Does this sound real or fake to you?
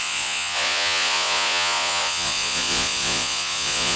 fake